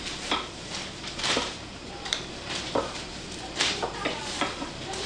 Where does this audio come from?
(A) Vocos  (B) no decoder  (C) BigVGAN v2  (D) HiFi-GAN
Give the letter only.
C